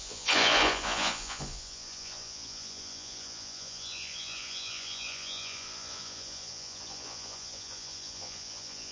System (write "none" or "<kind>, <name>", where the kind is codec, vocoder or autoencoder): vocoder, Vocos